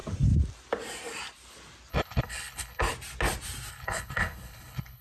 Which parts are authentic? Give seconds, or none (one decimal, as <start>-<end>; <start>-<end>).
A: 0.0-1.9; 2.8-3.7